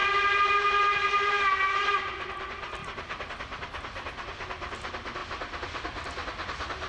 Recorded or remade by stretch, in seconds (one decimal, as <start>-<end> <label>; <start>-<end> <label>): 0.0-2.8 recorded; 2.8-3.3 remade; 3.3-6.9 recorded